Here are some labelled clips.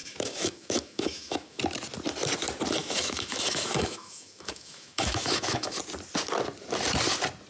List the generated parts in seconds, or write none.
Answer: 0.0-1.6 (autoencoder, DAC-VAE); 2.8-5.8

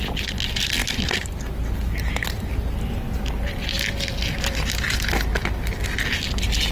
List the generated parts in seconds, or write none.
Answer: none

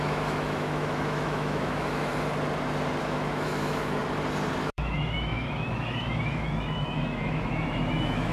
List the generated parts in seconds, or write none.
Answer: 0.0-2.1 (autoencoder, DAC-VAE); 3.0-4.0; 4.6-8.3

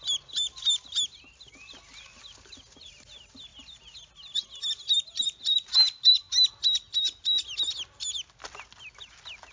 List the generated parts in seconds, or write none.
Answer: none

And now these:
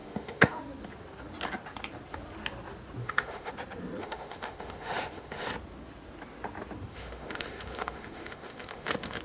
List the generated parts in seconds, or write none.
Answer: 0.0-0.6 (autoencoder, DAC-VAE); 3.0-3.5; 4.0-5.5; 6.9-9.2

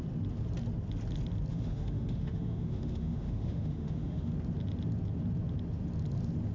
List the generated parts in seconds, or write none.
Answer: 1.5-4.3 (autoencoder, DAC-VAE)